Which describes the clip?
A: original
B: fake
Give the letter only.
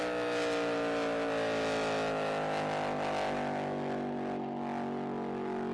A